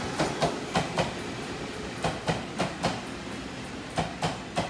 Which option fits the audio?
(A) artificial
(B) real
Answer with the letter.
B